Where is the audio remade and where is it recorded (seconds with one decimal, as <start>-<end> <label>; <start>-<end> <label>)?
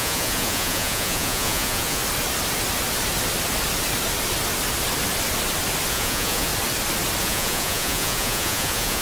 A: 0.0-2.0 remade; 2.0-5.9 recorded; 5.9-6.5 remade; 6.5-7.2 recorded; 7.2-9.0 remade